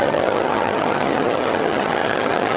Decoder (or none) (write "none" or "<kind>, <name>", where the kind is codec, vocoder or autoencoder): vocoder, HiFi-GAN